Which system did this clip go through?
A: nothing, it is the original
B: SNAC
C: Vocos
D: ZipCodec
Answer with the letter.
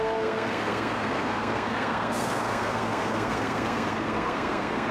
B